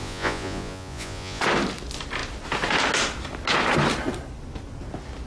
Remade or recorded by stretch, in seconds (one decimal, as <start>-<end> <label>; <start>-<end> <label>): 0.0-1.4 remade; 1.4-5.3 recorded

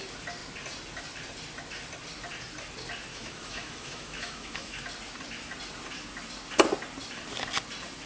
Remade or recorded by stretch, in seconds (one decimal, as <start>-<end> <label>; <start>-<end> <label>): 0.0-3.1 recorded; 3.1-4.8 remade; 4.8-8.1 recorded